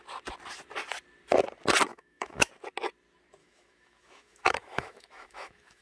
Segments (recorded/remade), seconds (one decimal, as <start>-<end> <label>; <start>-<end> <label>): 0.0-1.9 recorded; 1.9-2.5 remade; 2.5-3.4 recorded; 3.4-5.8 remade